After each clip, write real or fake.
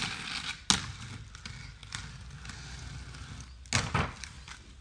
real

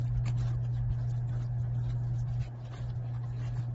real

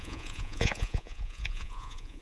fake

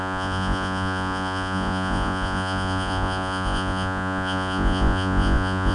fake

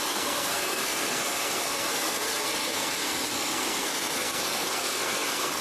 fake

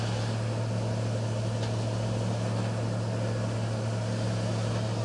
real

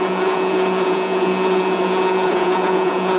fake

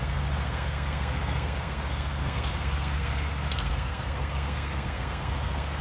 fake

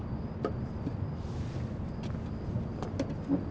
real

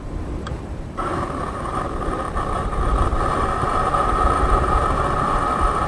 fake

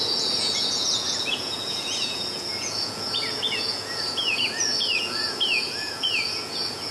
fake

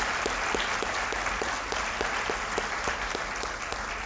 real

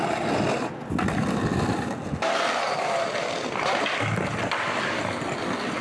real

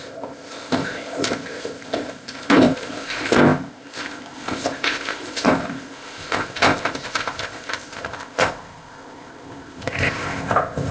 fake